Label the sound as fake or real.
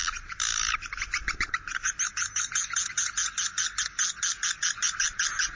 real